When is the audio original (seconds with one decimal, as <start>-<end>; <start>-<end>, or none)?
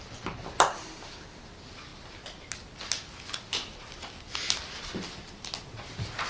0.0-6.3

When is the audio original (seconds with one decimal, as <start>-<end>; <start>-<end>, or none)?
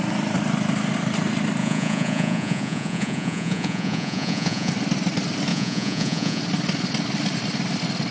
0.0-1.6; 4.7-5.5; 6.4-8.1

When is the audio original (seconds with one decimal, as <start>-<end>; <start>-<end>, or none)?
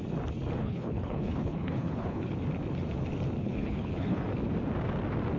0.0-0.6; 2.3-3.4; 4.2-5.4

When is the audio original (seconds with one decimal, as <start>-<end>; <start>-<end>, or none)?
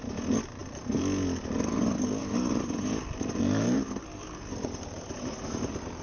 0.0-2.2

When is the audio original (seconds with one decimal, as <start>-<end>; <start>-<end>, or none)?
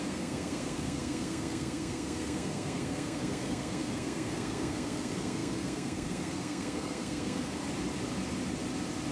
7.6-9.1